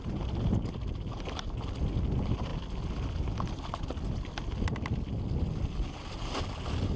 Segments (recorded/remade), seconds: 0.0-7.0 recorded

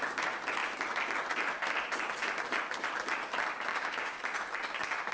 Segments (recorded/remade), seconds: 0.0-3.7 recorded; 3.7-4.2 remade; 4.2-5.1 recorded

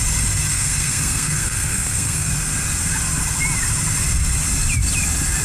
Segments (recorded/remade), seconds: 0.0-0.5 recorded; 0.5-2.3 remade; 2.3-5.4 recorded

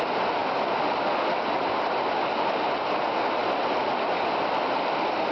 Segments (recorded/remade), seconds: 0.0-5.3 recorded

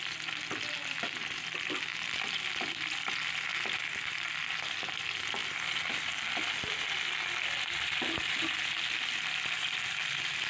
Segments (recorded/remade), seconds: 0.0-10.5 recorded

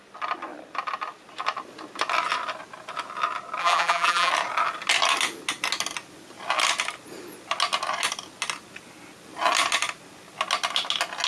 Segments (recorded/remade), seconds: 0.0-3.6 recorded; 3.6-4.3 remade; 4.3-11.3 recorded

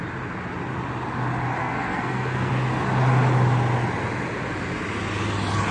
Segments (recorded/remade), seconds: 0.0-1.6 recorded; 1.6-2.5 remade; 2.5-5.7 recorded

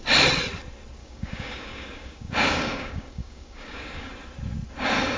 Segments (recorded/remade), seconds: 0.0-1.0 recorded; 1.0-4.1 remade; 4.1-5.2 recorded